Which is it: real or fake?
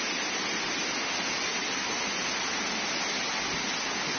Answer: real